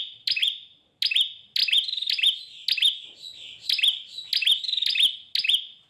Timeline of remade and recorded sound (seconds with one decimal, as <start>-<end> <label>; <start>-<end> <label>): 0.0-0.4 recorded; 0.4-0.9 remade; 0.9-5.9 recorded